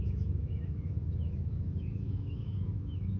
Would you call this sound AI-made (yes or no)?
yes